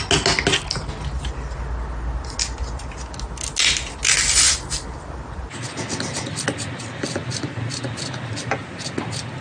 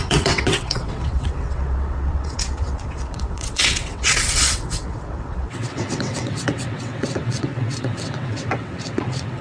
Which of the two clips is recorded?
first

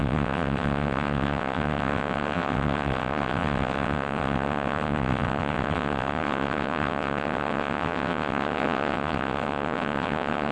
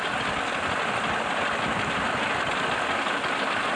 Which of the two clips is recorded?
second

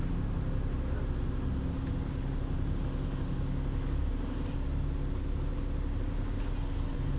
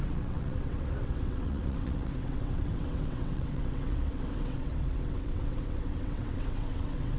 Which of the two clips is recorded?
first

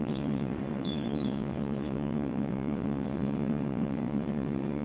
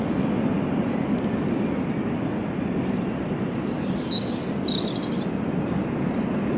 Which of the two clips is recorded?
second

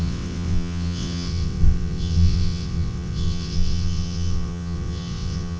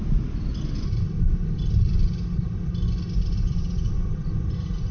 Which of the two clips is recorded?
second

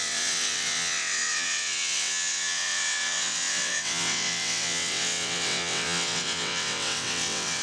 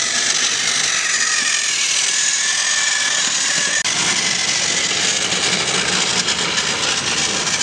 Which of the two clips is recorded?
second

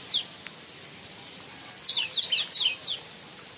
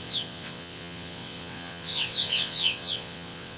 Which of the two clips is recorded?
first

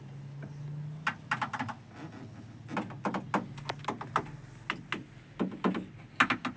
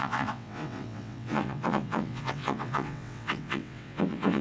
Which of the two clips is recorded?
first